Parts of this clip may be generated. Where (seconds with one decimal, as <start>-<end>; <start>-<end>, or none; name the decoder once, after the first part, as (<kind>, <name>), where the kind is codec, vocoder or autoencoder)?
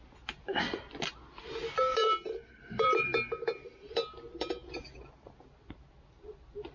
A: 2.0-4.7 (vocoder, BigVGAN v2)